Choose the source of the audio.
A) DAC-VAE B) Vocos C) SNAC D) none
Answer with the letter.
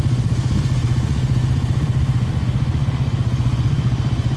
B